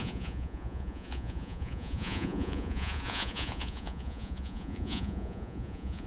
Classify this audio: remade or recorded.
remade